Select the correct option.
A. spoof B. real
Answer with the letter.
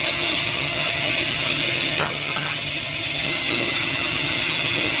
A